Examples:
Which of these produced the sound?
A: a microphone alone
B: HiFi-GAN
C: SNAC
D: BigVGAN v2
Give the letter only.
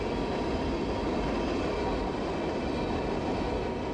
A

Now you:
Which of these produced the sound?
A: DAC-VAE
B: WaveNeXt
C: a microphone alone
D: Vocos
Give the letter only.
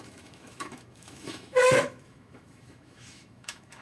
A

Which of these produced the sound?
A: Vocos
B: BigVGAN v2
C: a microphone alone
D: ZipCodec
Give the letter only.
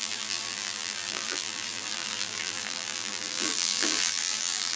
B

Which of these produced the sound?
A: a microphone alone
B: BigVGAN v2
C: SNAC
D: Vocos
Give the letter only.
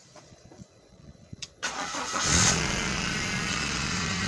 D